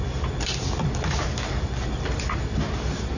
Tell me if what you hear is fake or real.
real